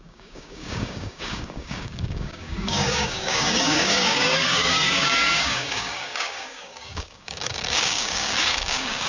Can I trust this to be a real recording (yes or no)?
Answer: no